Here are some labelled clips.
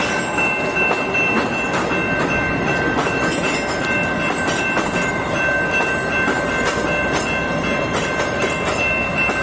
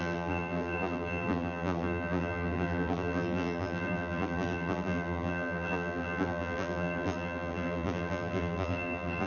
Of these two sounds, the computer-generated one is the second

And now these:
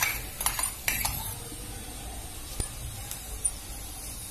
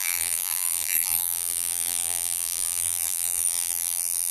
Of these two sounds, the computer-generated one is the second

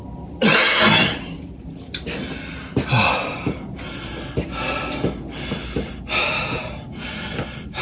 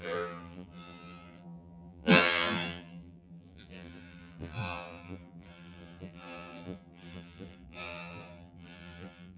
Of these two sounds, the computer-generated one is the second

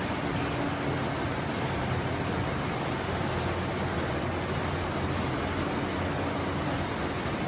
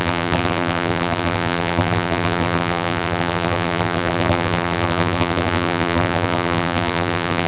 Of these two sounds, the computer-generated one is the second